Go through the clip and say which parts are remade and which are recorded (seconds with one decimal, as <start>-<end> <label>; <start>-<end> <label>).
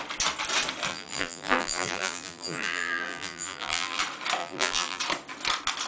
0.0-0.9 recorded; 0.9-4.0 remade; 4.0-4.4 recorded; 4.4-5.0 remade; 5.0-5.9 recorded